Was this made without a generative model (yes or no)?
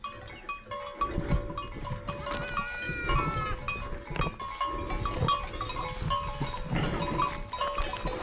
yes